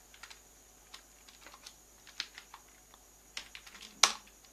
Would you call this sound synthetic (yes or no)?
no